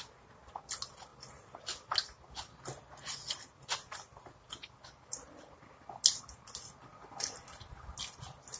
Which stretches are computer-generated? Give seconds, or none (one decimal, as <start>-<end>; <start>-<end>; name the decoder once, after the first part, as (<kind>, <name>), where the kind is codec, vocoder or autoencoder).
none